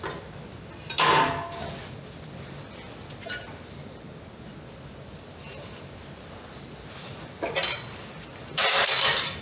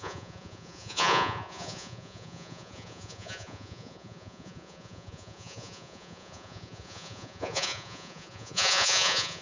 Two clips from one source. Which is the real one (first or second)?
first